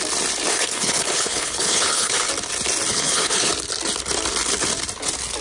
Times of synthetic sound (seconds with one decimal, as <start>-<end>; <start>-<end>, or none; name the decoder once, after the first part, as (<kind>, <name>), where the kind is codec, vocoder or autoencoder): 0.5-2.3 (codec, HILCodec); 2.9-3.5